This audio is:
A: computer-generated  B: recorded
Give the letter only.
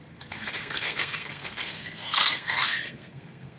A